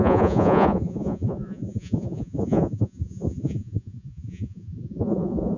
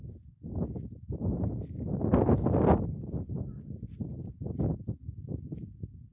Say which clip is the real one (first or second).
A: second